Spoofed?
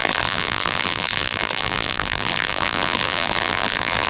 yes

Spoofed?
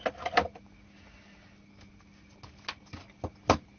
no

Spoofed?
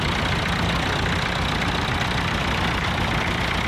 no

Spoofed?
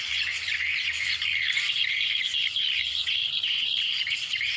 yes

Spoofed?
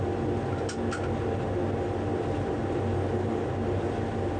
no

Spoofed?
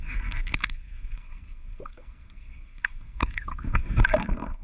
yes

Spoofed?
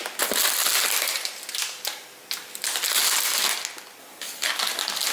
no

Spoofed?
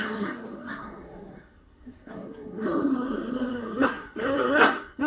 yes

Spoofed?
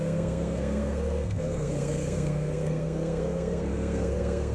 yes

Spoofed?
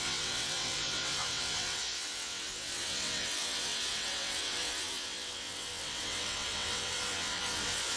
yes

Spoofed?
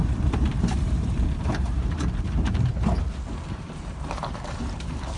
yes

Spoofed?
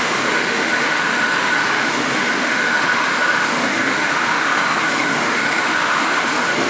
yes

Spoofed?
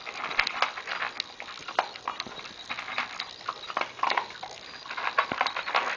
no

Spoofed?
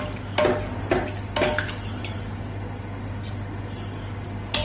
no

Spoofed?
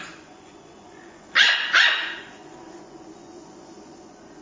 yes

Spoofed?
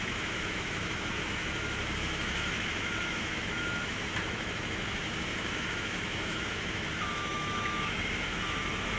yes